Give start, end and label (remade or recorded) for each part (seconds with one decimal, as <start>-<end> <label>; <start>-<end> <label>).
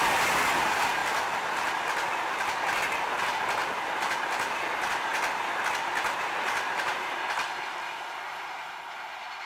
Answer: 0.0-9.5 recorded